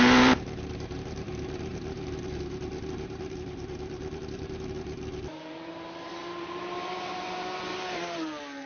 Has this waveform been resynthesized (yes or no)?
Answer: yes